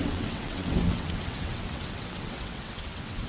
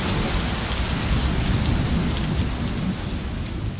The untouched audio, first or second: second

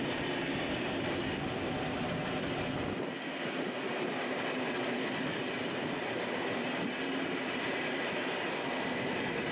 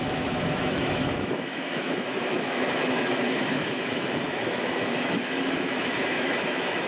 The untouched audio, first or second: first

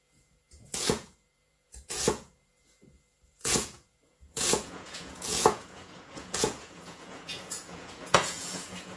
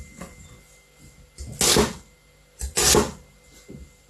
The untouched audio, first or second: second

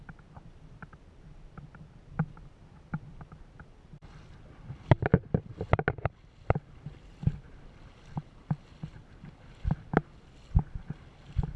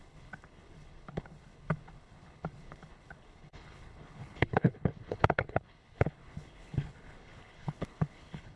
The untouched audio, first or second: first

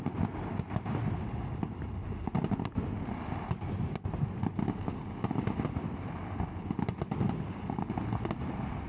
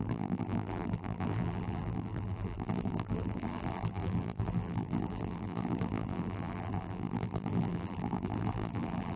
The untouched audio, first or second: first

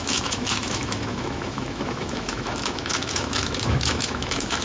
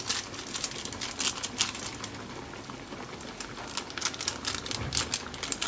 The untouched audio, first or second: second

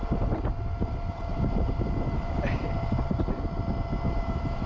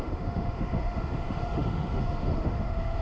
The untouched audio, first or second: first